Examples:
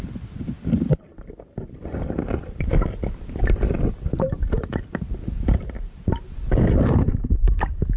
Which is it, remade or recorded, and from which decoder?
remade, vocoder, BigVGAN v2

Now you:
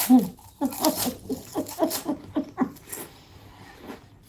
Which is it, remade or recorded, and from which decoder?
recorded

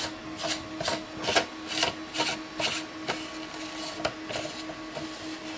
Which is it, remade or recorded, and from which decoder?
recorded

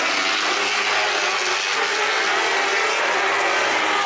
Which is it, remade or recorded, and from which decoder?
recorded